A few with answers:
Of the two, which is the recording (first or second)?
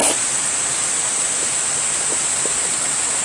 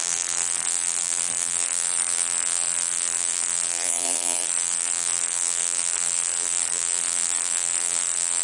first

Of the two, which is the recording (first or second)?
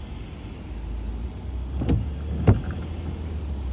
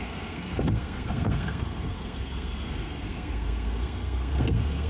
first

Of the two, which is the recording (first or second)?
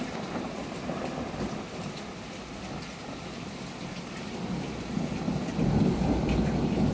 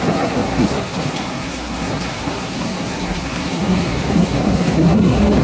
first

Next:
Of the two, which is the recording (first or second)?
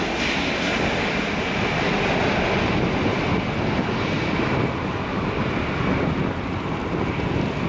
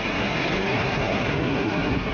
first